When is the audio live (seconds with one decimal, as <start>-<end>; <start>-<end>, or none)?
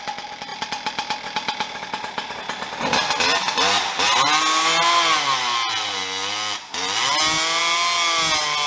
0.0-0.5; 1.1-8.7